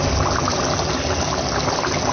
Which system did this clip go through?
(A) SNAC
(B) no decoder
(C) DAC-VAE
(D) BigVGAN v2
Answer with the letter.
B